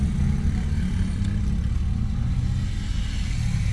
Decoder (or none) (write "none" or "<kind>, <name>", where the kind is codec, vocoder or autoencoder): none